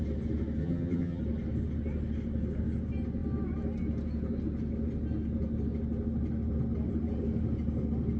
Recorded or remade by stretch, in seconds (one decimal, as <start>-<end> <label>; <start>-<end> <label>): 0.0-0.6 recorded; 0.6-1.2 remade; 1.2-8.2 recorded